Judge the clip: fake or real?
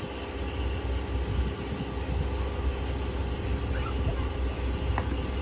real